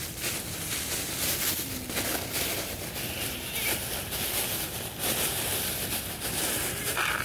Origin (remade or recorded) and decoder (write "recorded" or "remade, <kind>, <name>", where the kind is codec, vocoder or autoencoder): remade, vocoder, BigVGAN v2